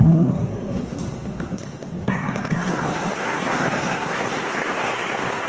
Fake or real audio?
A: fake